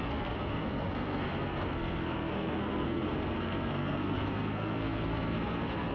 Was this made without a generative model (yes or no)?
no